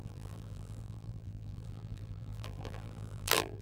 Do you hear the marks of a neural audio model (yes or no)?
yes